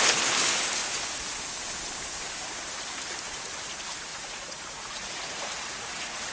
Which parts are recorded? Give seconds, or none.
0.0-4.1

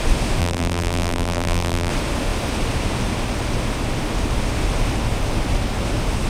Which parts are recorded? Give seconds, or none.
0.0-0.4; 1.9-6.3

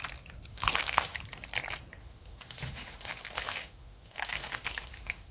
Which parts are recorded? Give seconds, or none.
0.0-0.5; 1.2-2.0